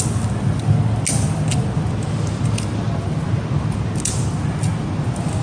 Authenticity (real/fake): real